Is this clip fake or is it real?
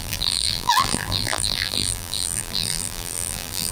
fake